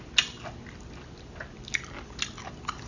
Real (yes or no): yes